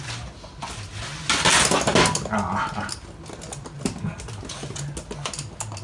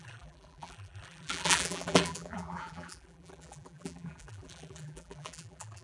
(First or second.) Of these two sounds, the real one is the first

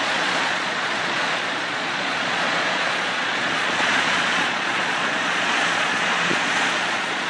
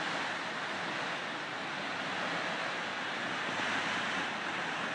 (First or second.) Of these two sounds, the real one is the second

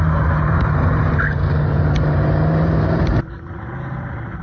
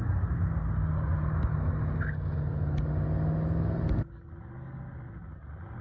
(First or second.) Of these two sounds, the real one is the second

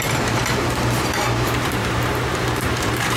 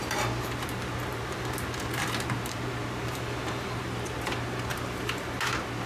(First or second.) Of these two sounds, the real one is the second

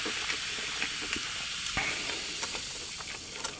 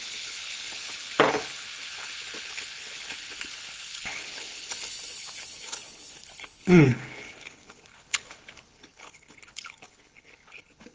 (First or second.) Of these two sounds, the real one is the first